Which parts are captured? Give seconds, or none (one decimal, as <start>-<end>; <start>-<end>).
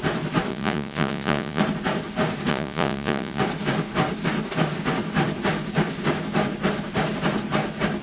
0.0-0.5; 1.6-2.5; 3.4-8.0